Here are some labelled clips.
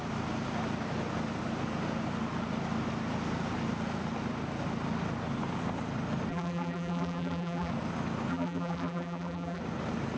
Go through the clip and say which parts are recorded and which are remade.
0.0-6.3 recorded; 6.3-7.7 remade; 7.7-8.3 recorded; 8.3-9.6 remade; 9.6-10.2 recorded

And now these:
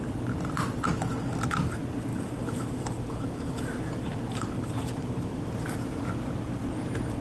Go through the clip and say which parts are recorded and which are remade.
0.0-2.1 recorded; 2.1-5.4 remade; 5.4-7.2 recorded

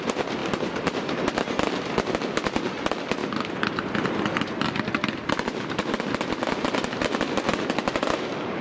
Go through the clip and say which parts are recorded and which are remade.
0.0-0.4 recorded; 0.4-1.2 remade; 1.2-3.2 recorded; 3.2-5.3 remade; 5.3-8.6 recorded

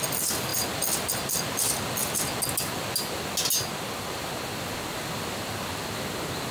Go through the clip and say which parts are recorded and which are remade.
0.0-6.5 recorded

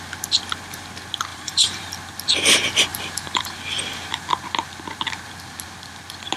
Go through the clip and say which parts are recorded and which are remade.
0.0-1.3 recorded; 1.3-1.9 remade; 1.9-2.9 recorded; 2.9-4.3 remade; 4.3-6.4 recorded

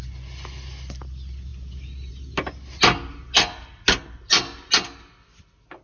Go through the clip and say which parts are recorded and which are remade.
0.0-5.8 recorded

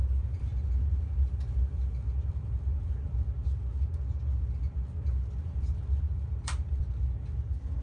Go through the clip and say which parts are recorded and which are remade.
0.0-0.5 remade; 0.5-2.1 recorded; 2.1-3.4 remade; 3.4-5.4 recorded; 5.4-7.8 remade

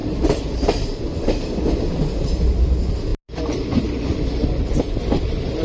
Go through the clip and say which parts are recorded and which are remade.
0.0-1.0 remade; 1.0-5.6 recorded